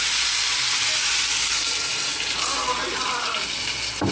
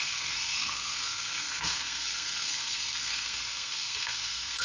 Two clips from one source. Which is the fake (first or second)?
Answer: second